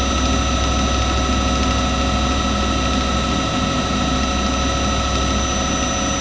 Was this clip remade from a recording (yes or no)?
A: no